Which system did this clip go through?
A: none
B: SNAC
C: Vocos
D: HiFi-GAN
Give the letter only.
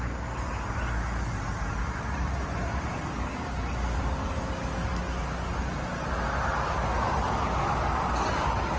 A